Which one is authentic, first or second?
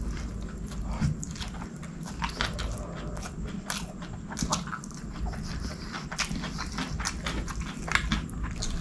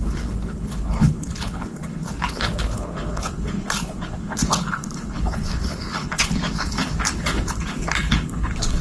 first